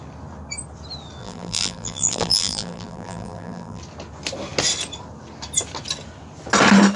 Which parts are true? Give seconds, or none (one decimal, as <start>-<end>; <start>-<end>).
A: 0.0-1.2; 3.8-7.0